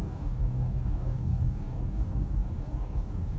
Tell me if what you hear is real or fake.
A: fake